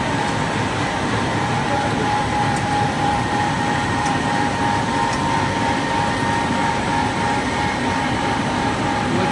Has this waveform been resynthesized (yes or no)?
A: yes